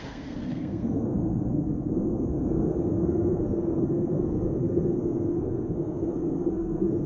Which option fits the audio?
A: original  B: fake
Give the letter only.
B